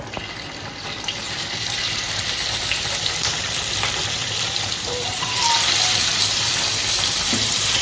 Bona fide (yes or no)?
no